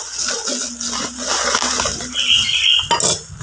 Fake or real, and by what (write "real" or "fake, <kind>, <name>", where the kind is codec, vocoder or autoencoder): real